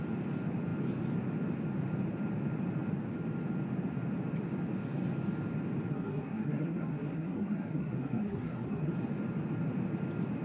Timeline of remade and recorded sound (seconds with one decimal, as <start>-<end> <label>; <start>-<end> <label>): 0.0-5.9 recorded; 5.9-8.9 remade; 8.9-10.4 recorded